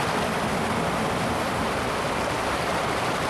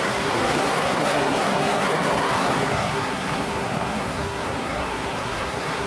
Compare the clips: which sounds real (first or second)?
first